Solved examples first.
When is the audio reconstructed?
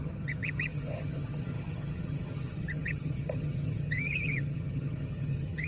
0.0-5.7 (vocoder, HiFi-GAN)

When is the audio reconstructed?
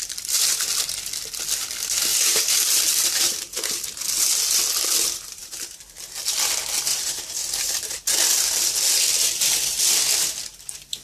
2.1-3.8 (vocoder, BigVGAN v2); 5.4-6.0; 6.9-8.1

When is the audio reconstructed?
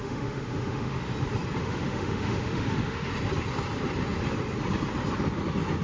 0.0-1.0 (autoencoder, DAC-VAE); 1.6-3.1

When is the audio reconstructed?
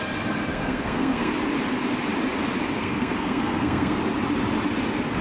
0.5-1.3 (codec, SNAC); 2.8-4.0